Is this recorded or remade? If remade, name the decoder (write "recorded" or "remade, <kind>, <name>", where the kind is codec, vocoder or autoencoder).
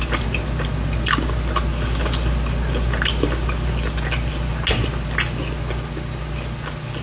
recorded